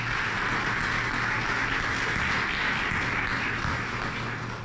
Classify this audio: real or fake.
real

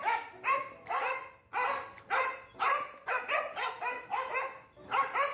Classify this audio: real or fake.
real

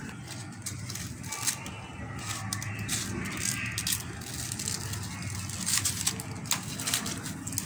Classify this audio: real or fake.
real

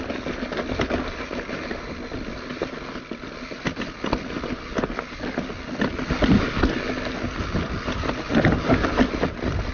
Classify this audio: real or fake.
real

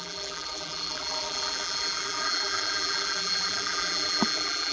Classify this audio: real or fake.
fake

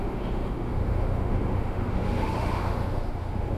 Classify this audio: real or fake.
fake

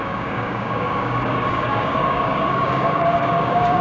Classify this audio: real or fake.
fake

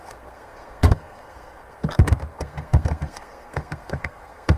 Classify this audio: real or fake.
fake